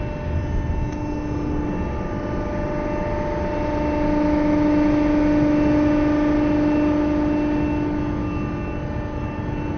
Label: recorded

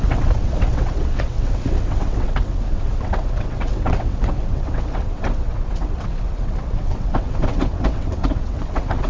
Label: remade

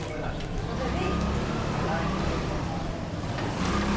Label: recorded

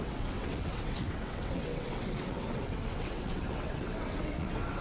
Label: remade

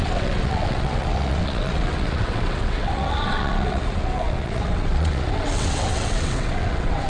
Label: remade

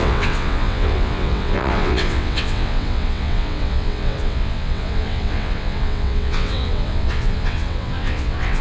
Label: remade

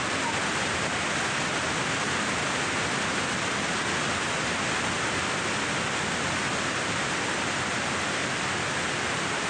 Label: recorded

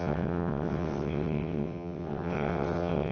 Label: remade